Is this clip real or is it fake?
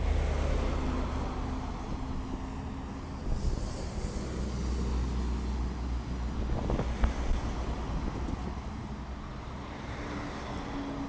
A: real